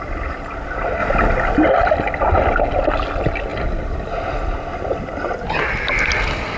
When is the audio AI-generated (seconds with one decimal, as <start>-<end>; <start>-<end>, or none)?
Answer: none